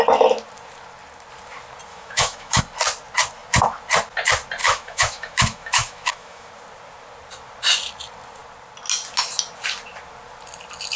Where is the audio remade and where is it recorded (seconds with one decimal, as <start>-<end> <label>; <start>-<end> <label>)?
0.0-1.9 recorded; 1.9-2.6 remade; 2.6-4.6 recorded; 4.6-6.5 remade; 6.5-11.0 recorded